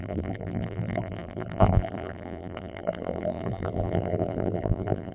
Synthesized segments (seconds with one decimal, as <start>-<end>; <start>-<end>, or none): 0.0-5.1